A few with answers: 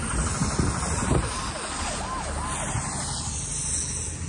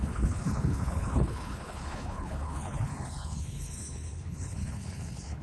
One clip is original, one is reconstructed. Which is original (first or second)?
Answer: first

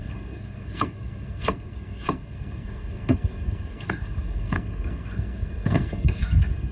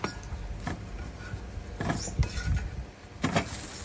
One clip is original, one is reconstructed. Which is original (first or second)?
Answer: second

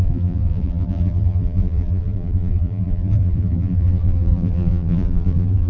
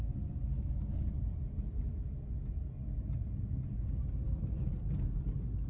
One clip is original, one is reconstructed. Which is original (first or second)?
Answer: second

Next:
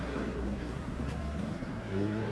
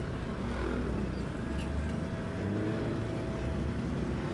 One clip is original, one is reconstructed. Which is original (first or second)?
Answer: second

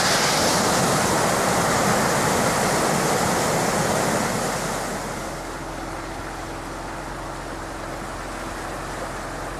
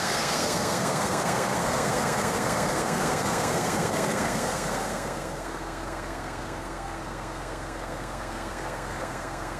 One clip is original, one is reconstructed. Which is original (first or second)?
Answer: first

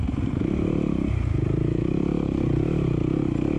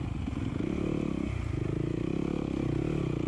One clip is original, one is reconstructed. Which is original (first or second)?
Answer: second